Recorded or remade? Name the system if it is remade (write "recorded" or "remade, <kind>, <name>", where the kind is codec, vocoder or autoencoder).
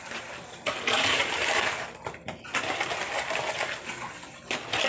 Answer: recorded